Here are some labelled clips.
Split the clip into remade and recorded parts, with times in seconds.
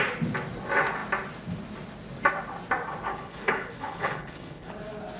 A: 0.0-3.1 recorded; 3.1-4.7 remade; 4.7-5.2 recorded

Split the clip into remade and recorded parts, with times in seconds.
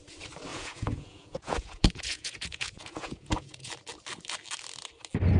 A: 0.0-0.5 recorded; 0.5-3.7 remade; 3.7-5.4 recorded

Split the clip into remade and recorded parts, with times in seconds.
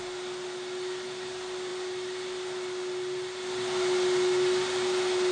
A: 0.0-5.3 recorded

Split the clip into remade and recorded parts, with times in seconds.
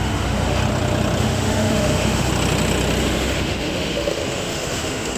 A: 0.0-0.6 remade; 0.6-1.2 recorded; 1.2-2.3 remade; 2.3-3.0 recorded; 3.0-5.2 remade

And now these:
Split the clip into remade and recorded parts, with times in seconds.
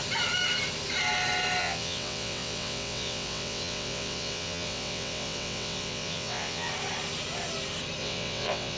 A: 0.0-1.6 recorded; 1.6-6.7 remade; 6.7-8.0 recorded; 8.0-8.8 remade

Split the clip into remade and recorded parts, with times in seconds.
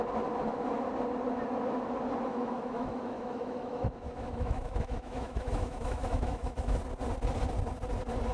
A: 0.0-2.3 recorded; 2.3-6.8 remade; 6.8-8.3 recorded